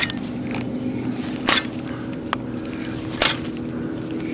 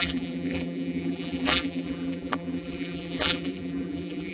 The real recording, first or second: first